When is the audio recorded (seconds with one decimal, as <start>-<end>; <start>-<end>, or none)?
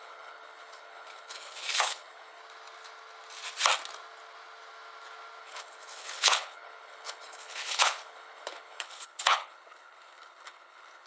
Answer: 2.4-5.4